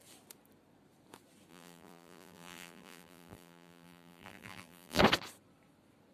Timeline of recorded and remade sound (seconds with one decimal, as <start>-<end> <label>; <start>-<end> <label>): 0.0-1.5 recorded; 1.5-5.0 remade; 5.0-6.1 recorded